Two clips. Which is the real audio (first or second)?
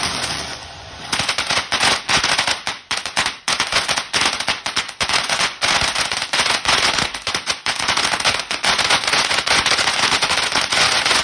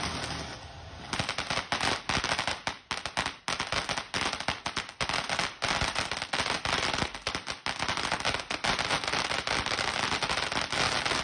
second